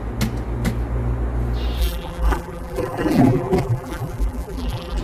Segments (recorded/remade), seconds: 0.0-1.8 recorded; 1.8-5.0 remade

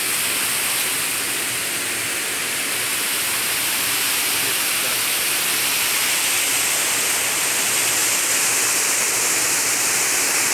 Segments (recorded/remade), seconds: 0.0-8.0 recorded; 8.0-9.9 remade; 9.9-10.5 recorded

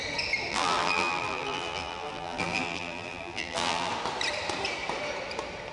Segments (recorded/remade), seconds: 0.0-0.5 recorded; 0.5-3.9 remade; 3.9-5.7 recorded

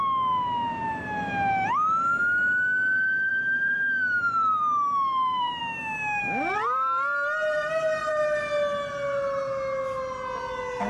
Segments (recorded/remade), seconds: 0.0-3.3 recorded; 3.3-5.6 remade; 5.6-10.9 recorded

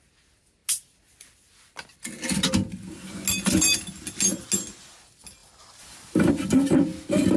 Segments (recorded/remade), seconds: 0.0-5.4 recorded; 5.4-6.3 remade; 6.3-7.4 recorded